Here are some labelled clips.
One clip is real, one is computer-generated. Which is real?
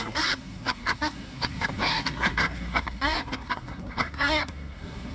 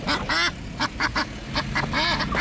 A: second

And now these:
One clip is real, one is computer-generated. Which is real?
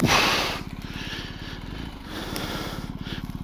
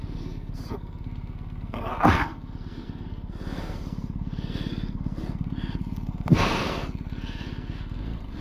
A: first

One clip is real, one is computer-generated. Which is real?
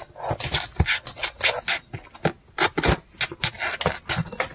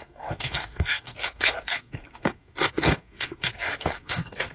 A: first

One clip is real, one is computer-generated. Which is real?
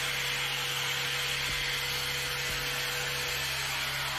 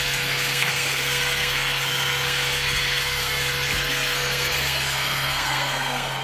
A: first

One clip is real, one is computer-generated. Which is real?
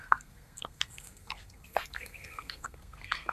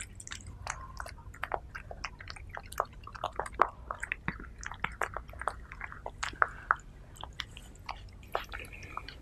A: second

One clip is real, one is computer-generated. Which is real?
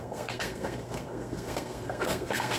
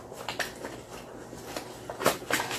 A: second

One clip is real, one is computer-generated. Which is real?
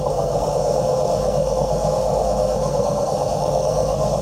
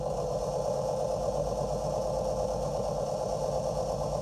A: second